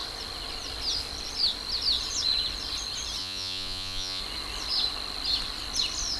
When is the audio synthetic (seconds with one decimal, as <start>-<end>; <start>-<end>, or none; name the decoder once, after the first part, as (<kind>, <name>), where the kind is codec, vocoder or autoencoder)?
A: 3.2-4.2 (vocoder, Vocos)